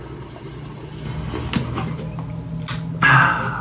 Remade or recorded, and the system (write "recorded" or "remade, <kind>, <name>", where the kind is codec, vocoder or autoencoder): recorded